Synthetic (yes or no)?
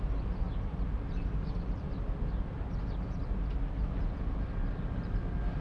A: no